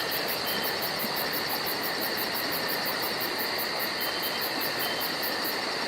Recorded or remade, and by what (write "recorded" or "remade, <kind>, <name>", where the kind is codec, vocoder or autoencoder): recorded